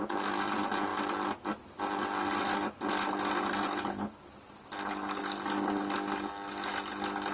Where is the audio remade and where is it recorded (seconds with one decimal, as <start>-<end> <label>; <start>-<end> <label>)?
0.0-7.3 recorded

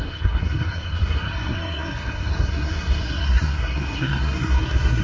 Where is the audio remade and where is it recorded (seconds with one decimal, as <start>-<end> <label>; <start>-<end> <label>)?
0.0-5.0 remade

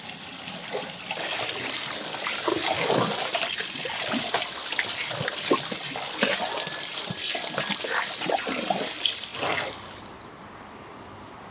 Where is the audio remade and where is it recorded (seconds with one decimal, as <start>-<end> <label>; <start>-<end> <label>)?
0.0-11.5 remade